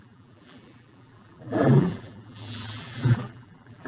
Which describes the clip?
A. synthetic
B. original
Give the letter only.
A